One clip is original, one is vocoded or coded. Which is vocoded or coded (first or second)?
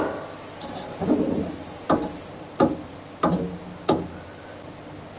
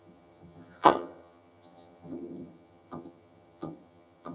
second